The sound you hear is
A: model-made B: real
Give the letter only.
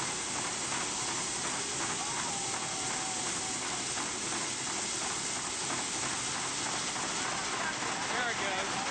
B